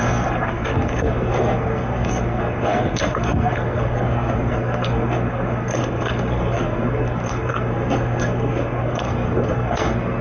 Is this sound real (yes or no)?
no